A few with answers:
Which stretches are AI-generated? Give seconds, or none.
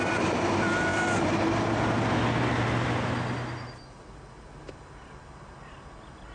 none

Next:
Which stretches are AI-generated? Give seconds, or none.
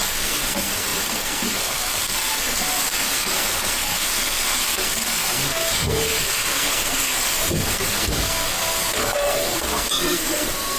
0.0-10.8 (codec, SNAC)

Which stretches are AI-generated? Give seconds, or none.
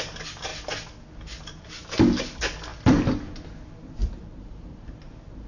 4.0-4.9 (vocoder, BigVGAN v2)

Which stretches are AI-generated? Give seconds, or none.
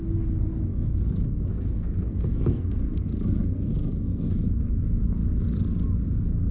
0.7-4.6 (codec, SNAC)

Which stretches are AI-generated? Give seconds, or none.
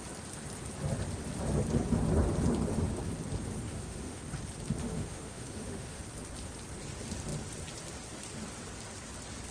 3.7-4.2 (autoencoder, DAC-VAE); 4.8-6.0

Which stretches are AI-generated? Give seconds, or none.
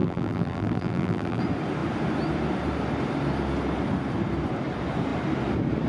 0.0-1.4 (vocoder, BigVGAN v2)